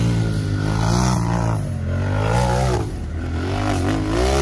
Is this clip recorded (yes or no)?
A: yes